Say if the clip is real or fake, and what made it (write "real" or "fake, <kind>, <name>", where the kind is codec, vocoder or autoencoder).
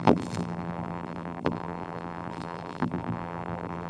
fake, vocoder, BigVGAN v2